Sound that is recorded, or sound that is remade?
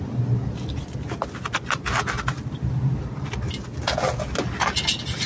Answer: recorded